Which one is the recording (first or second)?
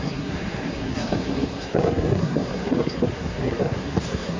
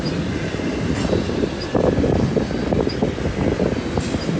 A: second